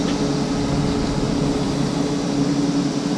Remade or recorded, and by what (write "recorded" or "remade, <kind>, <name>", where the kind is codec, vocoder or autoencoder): recorded